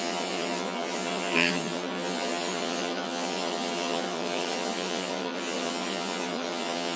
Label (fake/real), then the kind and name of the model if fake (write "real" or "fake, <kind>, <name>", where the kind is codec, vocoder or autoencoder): fake, vocoder, HiFi-GAN